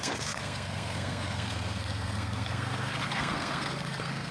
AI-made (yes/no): yes